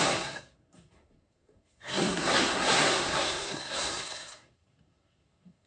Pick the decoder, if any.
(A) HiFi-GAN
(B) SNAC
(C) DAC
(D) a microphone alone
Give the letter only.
B